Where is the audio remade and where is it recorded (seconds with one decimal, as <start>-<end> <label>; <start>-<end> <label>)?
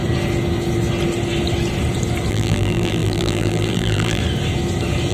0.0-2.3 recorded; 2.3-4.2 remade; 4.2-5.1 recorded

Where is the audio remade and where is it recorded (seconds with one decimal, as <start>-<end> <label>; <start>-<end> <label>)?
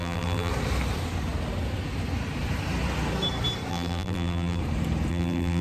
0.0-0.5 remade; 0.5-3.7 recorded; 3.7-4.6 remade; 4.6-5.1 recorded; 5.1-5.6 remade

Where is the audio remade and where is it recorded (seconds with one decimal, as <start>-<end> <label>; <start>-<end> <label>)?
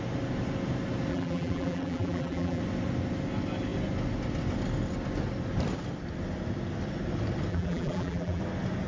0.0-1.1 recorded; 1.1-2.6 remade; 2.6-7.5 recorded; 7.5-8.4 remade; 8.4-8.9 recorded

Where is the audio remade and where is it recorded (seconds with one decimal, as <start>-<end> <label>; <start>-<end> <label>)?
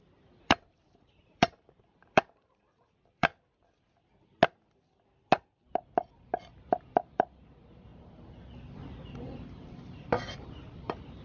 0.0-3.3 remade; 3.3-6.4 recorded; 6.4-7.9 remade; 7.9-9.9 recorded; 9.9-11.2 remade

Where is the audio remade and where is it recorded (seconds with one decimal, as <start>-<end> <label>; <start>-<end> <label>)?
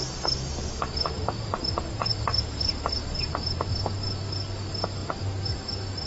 0.0-2.1 recorded; 2.1-3.3 remade; 3.3-6.1 recorded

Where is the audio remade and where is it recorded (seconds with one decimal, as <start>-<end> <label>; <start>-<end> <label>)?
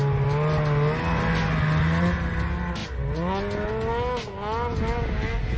0.0-5.6 recorded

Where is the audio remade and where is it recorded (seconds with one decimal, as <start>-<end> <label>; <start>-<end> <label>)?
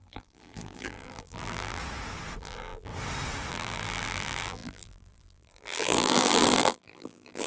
0.0-1.8 remade; 1.8-2.4 recorded; 2.4-2.9 remade; 2.9-3.5 recorded; 3.5-7.5 remade